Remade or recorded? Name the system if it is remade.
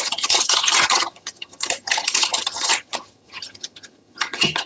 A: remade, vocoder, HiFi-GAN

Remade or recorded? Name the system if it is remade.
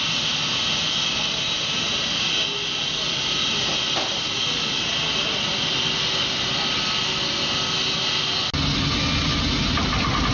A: recorded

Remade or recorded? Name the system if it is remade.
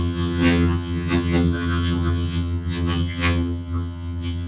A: remade, vocoder, HiFi-GAN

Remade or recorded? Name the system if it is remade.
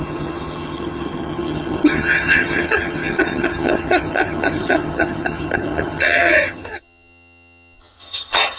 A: remade, vocoder, HiFi-GAN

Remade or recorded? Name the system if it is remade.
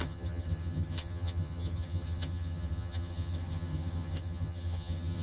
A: remade, vocoder, HiFi-GAN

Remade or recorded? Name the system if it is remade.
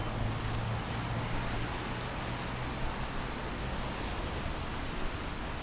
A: recorded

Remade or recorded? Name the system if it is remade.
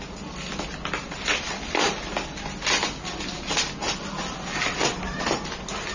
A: recorded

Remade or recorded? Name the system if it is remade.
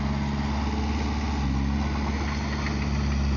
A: recorded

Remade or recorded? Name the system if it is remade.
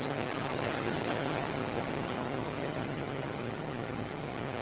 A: remade, vocoder, HiFi-GAN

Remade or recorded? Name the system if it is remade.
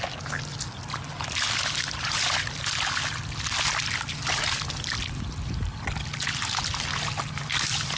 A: recorded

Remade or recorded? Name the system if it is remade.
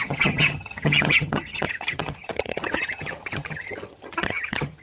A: remade, vocoder, HiFi-GAN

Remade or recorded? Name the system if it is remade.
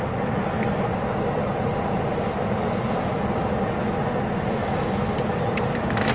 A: recorded